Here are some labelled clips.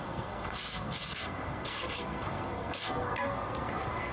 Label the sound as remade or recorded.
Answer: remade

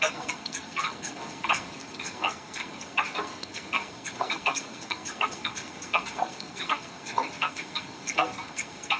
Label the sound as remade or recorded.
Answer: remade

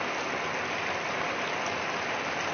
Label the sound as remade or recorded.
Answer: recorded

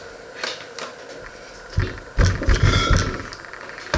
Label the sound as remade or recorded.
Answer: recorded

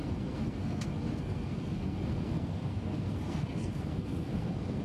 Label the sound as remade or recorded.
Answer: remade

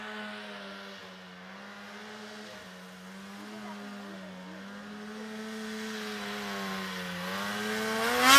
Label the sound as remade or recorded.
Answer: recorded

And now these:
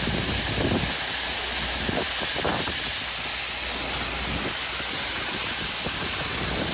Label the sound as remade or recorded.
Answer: recorded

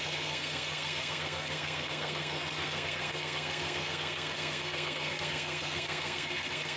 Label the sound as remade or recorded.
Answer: remade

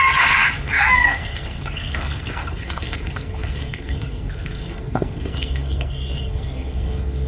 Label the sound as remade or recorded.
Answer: remade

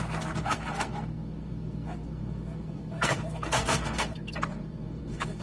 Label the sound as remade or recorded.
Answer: remade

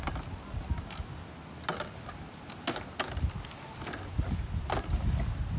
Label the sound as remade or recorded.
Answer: recorded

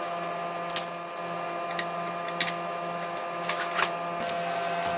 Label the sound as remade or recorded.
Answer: recorded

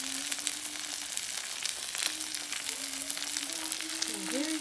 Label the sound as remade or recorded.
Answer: recorded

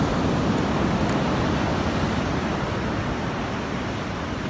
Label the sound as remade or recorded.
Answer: recorded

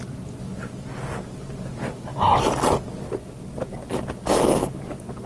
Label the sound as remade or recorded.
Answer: recorded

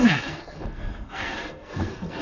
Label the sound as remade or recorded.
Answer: remade